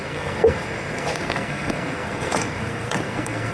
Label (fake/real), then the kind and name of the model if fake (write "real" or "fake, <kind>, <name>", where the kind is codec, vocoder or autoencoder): fake, codec, SNAC